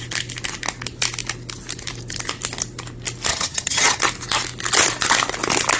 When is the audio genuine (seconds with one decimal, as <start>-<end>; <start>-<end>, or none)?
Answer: 0.0-3.3; 4.0-5.8